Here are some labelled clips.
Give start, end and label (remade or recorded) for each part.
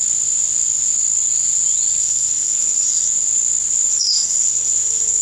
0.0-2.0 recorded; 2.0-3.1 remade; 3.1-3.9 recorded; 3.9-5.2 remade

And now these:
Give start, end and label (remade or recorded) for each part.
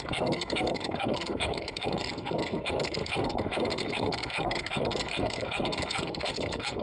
0.0-6.8 remade